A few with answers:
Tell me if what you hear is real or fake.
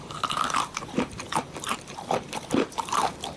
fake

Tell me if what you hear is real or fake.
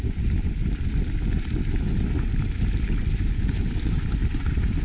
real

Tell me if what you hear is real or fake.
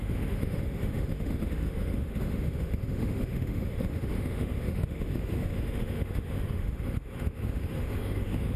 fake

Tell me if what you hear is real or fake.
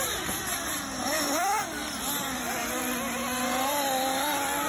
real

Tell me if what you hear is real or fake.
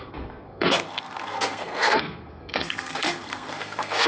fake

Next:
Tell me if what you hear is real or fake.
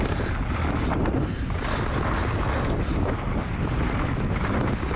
real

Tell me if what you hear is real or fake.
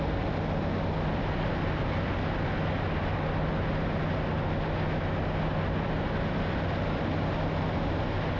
real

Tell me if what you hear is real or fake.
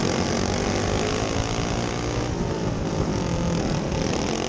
real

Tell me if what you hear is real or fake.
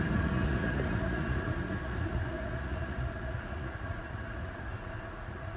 fake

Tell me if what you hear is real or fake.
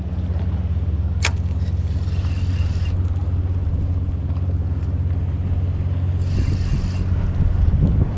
real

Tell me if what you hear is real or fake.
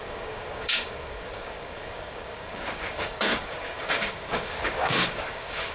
fake